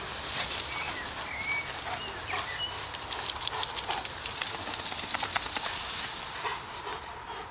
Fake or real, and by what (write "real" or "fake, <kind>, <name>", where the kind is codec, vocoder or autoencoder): real